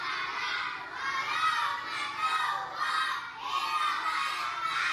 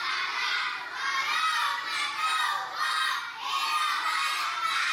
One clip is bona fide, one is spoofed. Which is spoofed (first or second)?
second